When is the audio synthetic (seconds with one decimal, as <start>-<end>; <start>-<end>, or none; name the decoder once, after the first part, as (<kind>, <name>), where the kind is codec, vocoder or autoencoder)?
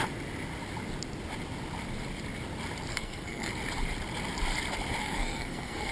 2.9-3.5 (codec, SNAC); 5.0-5.9